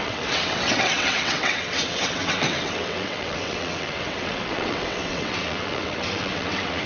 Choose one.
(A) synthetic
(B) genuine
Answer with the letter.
A